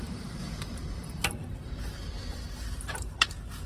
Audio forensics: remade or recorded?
remade